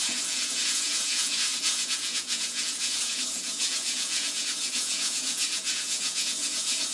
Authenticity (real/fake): fake